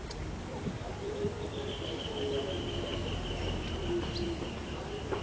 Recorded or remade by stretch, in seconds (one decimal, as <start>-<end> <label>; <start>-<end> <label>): 0.0-2.9 remade; 2.9-3.4 recorded; 3.4-5.2 remade